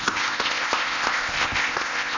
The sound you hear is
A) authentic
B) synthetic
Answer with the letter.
B